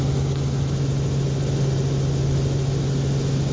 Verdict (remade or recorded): recorded